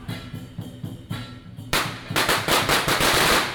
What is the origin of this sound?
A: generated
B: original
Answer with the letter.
A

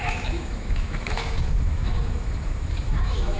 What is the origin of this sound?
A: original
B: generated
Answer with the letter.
B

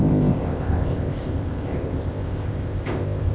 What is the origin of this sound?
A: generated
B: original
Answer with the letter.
A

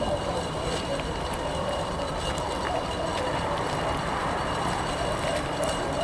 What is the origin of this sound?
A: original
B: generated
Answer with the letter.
B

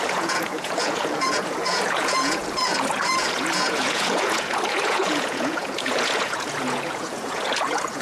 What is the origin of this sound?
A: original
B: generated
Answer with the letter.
B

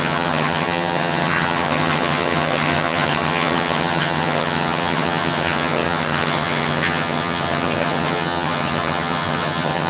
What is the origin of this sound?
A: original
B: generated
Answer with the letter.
B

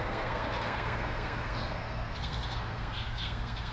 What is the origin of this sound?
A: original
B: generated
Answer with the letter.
B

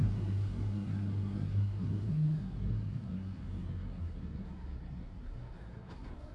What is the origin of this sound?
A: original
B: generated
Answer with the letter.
B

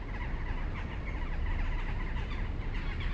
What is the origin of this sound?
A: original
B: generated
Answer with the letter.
A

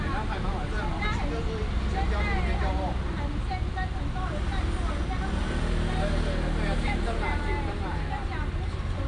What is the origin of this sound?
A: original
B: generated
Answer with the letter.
A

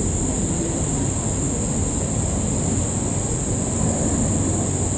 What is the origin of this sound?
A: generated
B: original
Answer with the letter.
B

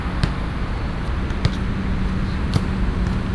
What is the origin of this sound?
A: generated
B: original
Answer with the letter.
B